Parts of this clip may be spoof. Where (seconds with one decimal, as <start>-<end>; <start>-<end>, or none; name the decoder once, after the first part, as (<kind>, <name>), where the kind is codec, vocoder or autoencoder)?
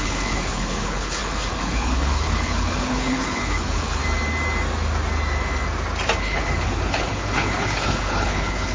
0.0-4.0 (codec, HILCodec); 6.2-8.7